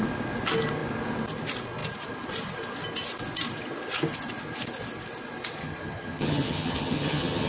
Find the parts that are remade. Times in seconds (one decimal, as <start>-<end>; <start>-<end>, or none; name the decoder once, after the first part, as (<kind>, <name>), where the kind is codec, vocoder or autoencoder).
5.6-7.5 (vocoder, HiFi-GAN)